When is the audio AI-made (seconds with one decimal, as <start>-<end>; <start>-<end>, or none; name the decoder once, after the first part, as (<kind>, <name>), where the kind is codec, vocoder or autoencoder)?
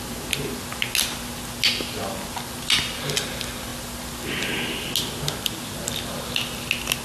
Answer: none